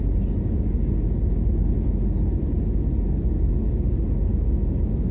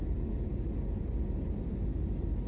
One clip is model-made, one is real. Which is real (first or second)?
first